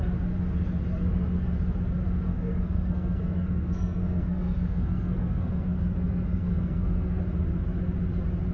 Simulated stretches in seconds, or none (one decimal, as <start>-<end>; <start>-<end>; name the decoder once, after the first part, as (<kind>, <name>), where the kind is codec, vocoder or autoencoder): 2.3-7.2 (codec, SNAC)

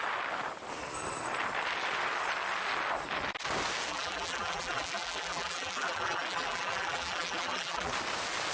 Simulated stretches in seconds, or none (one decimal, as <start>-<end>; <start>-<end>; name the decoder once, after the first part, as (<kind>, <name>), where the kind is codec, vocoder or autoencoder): 3.9-7.9 (vocoder, BigVGAN v2)

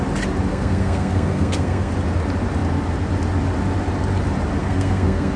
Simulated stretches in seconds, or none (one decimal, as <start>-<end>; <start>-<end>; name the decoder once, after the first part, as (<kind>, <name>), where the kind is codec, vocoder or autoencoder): 0.5-1.9 (codec, SNAC); 4.6-5.4

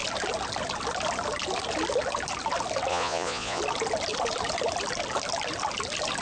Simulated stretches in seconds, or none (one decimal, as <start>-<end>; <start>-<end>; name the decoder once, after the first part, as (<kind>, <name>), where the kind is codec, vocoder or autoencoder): 2.9-3.6 (vocoder, Vocos)

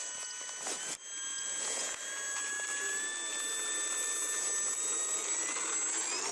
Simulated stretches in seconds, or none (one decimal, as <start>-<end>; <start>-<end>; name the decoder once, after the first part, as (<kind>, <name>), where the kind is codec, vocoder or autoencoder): 1.3-2.0 (vocoder, Vocos)

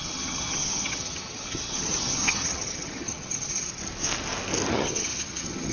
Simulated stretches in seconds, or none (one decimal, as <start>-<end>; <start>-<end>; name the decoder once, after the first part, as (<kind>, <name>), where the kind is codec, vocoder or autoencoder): 0.0-3.8 (vocoder, HiFi-GAN); 4.7-5.7

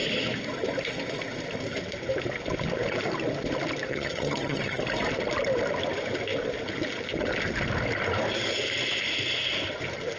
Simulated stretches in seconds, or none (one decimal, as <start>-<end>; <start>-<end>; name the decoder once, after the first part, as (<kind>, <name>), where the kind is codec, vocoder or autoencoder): 3.9-4.8 (vocoder, HiFi-GAN)

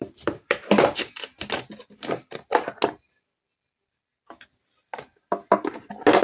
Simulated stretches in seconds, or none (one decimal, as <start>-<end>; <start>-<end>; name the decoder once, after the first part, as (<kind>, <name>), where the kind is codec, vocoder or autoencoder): 0.0-1.1 (vocoder, BigVGAN v2)